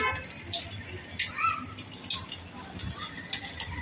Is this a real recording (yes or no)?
yes